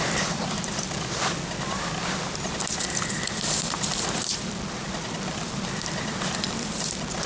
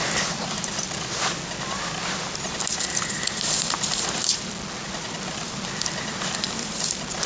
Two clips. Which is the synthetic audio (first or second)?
first